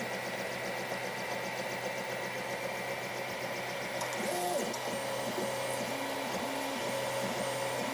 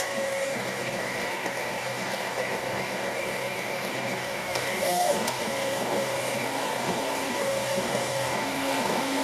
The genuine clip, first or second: first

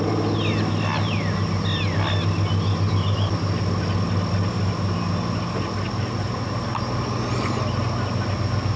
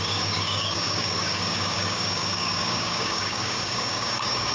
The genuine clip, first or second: first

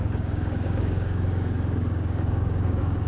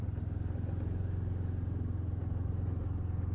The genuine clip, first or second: second